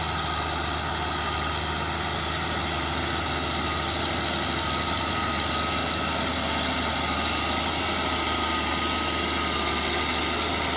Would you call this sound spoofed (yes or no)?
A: no